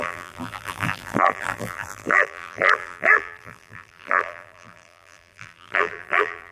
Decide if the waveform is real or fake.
fake